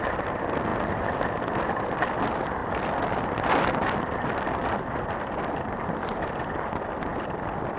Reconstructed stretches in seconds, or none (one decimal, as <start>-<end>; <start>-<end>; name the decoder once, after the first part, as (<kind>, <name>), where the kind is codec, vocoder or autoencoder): none